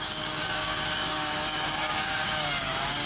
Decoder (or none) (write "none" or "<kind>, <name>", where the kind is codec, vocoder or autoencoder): codec, DAC